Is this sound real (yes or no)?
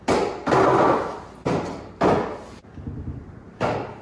yes